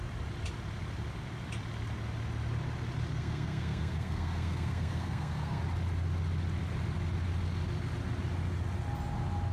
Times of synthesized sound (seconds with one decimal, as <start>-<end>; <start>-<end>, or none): 3.1-5.6